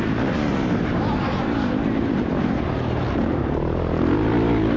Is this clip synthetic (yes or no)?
yes